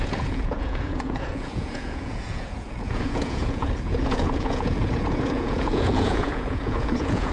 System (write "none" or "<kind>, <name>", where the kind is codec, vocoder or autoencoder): vocoder, Vocos